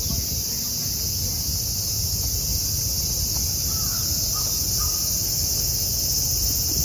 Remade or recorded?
recorded